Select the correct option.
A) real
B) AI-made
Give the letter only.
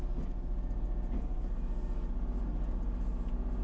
A